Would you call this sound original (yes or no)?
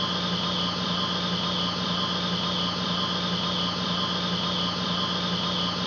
yes